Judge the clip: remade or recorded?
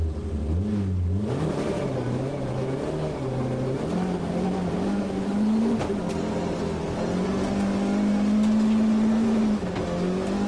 recorded